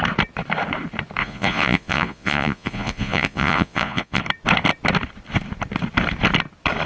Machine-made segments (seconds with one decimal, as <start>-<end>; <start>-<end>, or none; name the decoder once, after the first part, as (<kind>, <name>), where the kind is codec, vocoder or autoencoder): 1.2-4.2 (vocoder, Vocos)